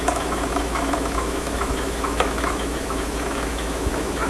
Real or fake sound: fake